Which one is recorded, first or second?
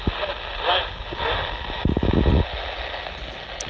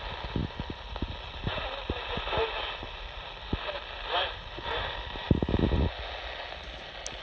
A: first